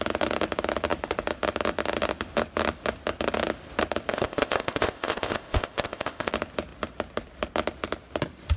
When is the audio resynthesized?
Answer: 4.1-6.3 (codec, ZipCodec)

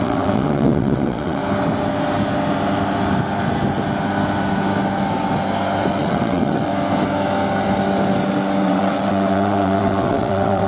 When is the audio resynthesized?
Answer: 0.0-1.4 (vocoder, WaveNeXt); 5.9-6.7; 8.6-10.7

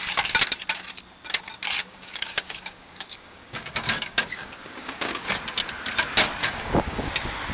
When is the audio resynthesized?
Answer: 1.8-5.3 (codec, DAC); 6.4-7.0

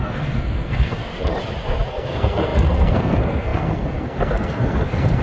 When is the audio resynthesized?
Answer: 0.0-1.0 (codec, SNAC); 1.9-5.2

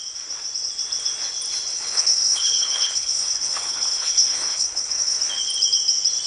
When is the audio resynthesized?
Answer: 1.7-5.2 (codec, HILCodec)

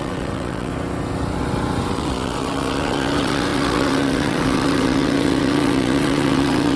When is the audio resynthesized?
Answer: 0.0-0.7 (vocoder, WaveNeXt); 1.9-6.8

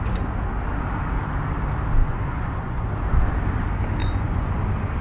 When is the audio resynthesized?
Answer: 2.0-2.9 (vocoder, Vocos); 4.0-4.6

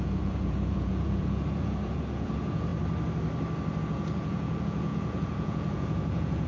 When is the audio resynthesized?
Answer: 0.0-2.7 (vocoder, Vocos); 3.8-6.5